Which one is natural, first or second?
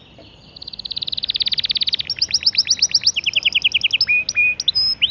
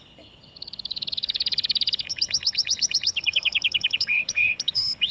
first